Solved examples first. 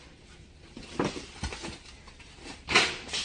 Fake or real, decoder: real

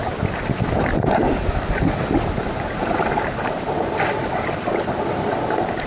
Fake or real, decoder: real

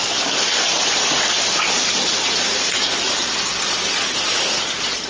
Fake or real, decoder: real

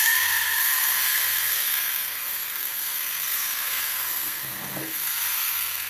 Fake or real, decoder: fake, codec, SNAC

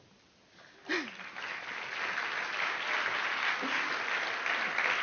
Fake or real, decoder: real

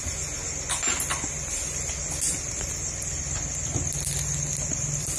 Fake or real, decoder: real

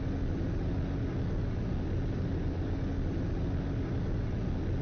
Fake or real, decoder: real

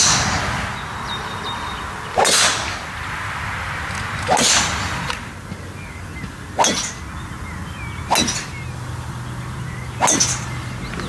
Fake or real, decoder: real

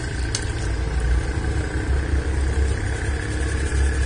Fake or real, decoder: real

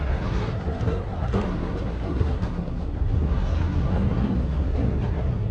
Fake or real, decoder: fake, codec, SNAC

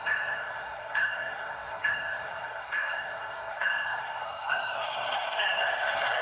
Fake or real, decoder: fake, codec, SNAC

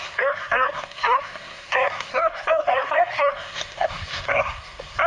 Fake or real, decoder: fake, codec, SNAC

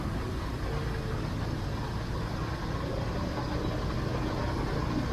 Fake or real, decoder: real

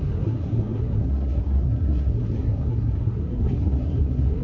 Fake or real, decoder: fake, codec, SNAC